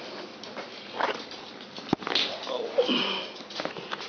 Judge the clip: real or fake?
real